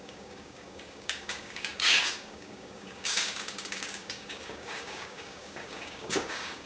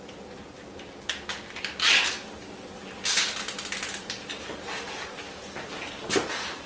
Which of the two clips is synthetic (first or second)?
first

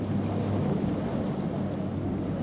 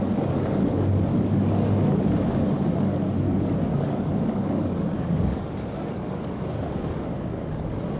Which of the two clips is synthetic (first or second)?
second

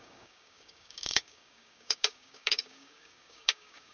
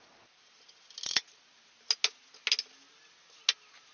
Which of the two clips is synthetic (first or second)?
first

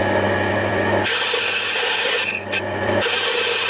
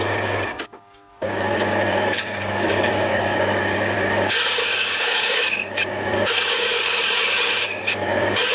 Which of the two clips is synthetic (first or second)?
second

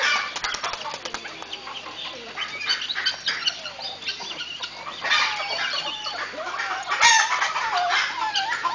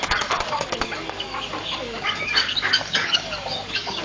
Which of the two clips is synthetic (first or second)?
second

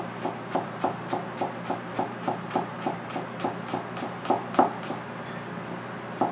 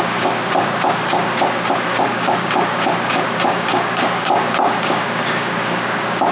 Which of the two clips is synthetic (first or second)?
second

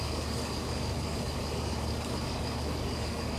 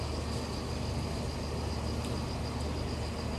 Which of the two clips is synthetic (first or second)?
first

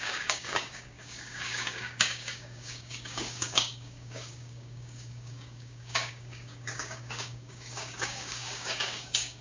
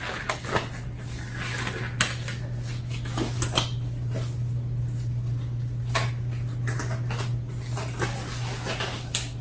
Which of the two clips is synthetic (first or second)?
first